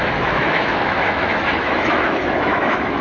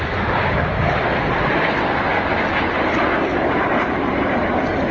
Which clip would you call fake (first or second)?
first